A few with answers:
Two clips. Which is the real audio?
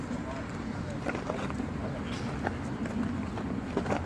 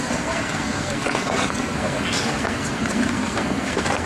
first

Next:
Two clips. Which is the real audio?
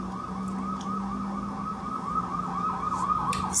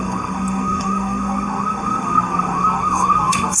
first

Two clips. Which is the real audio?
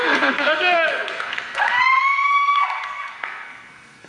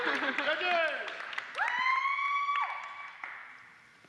second